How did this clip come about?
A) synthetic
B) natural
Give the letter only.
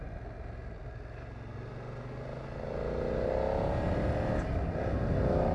B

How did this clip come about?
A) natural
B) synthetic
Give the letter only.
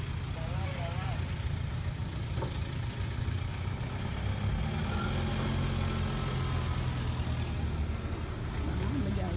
A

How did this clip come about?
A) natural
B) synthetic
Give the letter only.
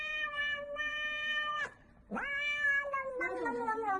B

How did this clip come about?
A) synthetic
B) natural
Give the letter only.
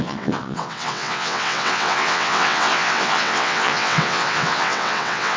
A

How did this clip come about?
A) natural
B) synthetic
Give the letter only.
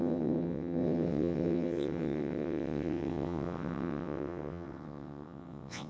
B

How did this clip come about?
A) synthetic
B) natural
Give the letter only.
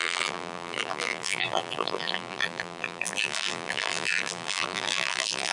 A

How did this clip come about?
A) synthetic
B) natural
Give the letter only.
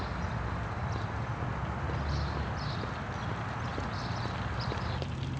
B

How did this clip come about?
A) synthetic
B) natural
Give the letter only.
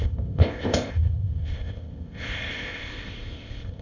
A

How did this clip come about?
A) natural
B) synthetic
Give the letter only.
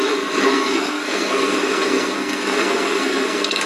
B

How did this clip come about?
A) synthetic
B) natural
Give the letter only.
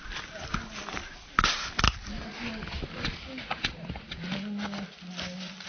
B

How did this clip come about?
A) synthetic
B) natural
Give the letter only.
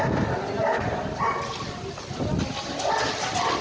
B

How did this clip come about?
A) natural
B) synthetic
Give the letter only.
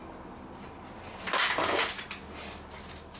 A